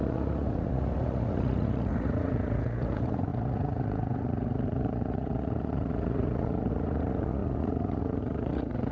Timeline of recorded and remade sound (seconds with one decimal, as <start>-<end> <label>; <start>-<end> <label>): 0.0-8.9 remade